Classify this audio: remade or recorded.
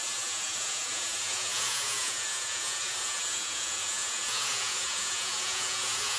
remade